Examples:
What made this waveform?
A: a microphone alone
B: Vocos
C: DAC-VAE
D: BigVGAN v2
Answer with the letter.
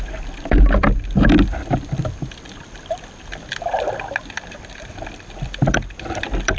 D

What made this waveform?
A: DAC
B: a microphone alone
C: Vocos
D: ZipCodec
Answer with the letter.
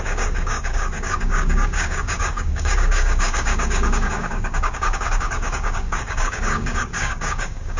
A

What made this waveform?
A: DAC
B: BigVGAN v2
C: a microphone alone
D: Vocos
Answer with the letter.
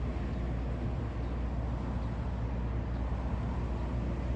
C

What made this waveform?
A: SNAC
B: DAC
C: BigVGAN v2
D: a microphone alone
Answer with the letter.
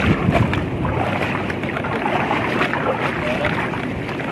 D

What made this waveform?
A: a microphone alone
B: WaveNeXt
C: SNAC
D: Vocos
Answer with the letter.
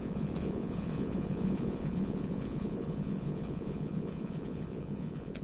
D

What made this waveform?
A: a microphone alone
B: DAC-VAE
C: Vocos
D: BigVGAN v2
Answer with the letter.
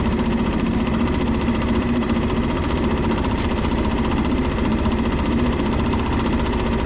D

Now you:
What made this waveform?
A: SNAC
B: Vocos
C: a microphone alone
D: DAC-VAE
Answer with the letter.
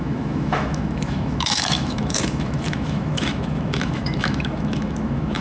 D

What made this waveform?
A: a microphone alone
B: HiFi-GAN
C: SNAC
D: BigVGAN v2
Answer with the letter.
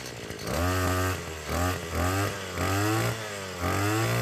A